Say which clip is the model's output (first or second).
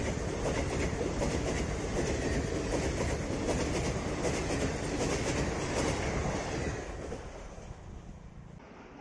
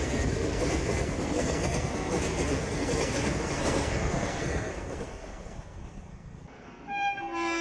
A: second